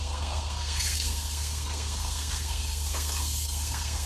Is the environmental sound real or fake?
fake